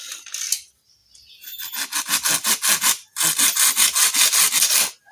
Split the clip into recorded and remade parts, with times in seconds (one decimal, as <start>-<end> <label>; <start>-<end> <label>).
0.0-5.1 recorded